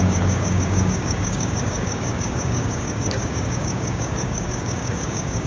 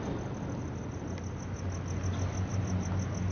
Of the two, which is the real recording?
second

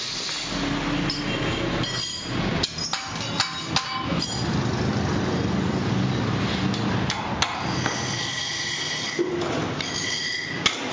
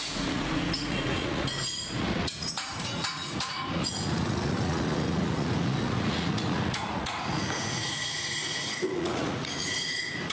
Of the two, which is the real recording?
first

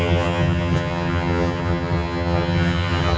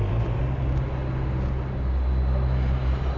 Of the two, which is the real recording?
second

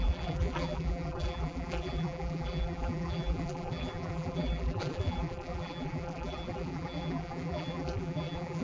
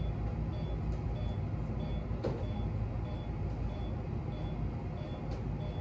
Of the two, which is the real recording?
second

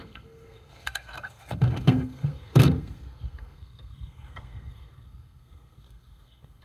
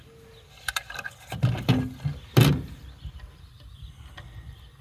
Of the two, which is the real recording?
second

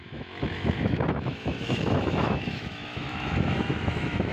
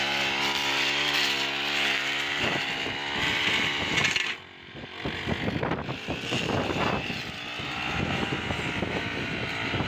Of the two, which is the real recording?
second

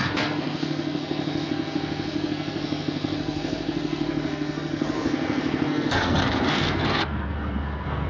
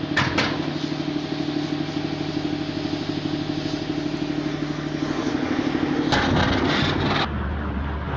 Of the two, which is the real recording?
second